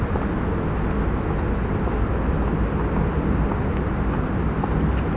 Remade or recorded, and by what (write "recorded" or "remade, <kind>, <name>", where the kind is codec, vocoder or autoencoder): recorded